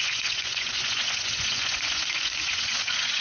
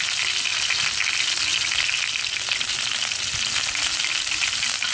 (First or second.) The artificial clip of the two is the first